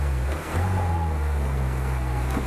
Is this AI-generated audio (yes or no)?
yes